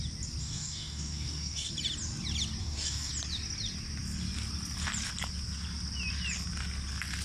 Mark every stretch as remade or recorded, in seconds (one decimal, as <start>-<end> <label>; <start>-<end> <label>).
0.0-0.4 recorded; 0.4-1.7 remade; 1.7-2.6 recorded; 2.6-3.1 remade; 3.1-7.2 recorded